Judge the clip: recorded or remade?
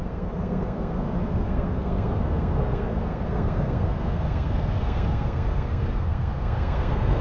remade